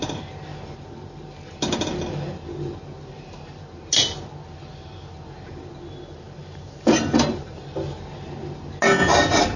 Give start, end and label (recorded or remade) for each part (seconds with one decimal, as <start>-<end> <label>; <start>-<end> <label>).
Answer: 0.0-6.4 recorded; 6.4-7.6 remade; 7.6-9.6 recorded